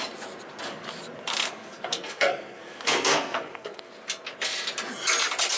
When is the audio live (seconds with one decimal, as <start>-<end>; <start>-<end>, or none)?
0.0-1.3; 3.9-5.6